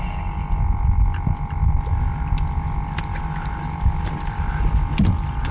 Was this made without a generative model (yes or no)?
yes